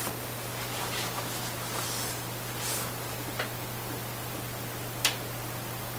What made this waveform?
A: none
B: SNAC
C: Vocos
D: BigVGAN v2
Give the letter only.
A